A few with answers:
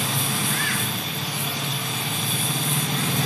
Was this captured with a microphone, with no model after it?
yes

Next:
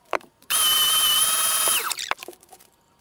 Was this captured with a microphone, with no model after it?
no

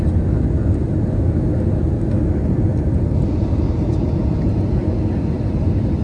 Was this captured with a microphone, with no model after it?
yes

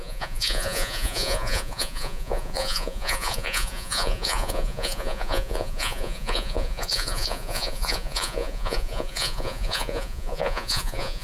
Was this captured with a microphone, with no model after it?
no